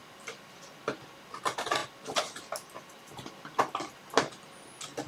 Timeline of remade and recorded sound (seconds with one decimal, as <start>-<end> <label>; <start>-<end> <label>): 0.0-0.8 remade; 0.8-1.8 recorded; 1.8-3.9 remade; 3.9-5.1 recorded